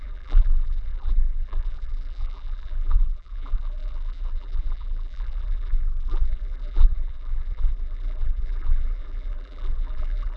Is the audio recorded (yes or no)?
no